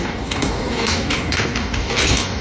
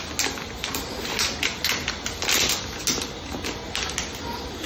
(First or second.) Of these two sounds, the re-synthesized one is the first